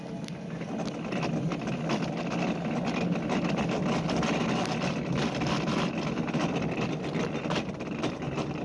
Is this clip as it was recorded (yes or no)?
yes